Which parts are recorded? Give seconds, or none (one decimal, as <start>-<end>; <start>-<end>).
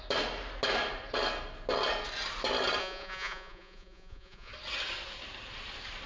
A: 0.0-2.8; 4.5-6.1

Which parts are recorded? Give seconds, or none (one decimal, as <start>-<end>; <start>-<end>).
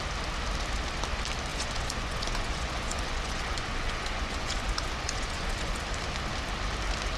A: 0.0-1.5; 5.8-7.2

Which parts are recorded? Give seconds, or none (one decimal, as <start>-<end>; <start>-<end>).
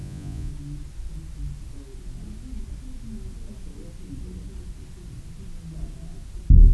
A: 0.5-6.7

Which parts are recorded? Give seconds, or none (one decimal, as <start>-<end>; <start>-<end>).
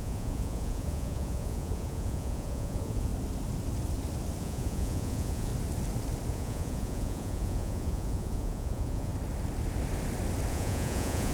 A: 3.1-4.4; 5.5-6.3; 9.1-10.5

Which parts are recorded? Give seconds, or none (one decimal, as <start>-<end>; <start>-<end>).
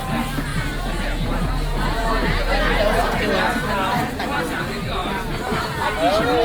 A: 0.0-0.5; 3.2-6.4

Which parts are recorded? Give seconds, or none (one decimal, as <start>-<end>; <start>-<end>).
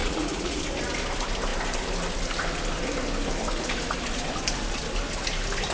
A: 0.6-5.7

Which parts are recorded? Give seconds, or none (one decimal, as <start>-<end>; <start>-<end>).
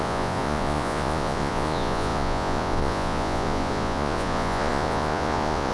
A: none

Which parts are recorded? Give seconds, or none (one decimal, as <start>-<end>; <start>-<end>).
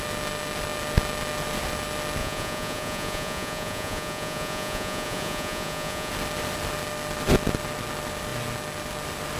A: 0.0-2.2; 6.1-9.4